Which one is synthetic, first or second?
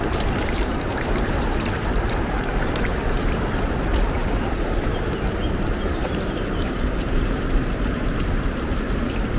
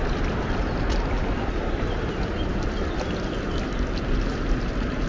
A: first